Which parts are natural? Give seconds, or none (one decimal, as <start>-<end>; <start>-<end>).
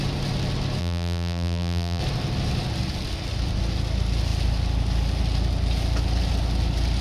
0.0-0.8; 2.0-7.0